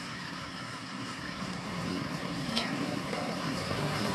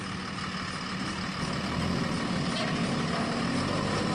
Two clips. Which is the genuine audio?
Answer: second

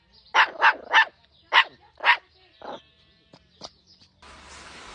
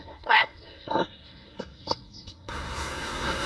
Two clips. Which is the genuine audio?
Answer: first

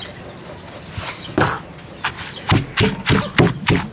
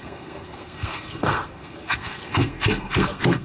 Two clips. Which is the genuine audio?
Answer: first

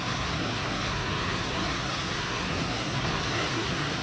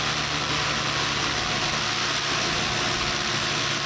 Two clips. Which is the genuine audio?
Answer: second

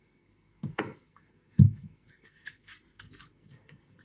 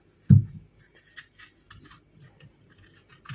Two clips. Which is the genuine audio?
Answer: second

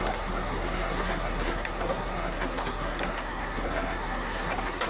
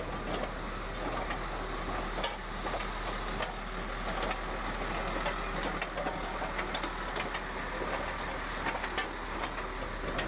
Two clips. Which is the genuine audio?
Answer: second